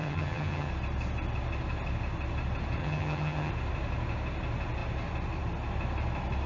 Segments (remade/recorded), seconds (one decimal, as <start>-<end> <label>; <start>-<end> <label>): 0.0-0.7 remade; 0.7-2.8 recorded; 2.8-3.5 remade; 3.5-6.5 recorded